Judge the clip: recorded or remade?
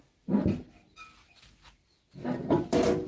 recorded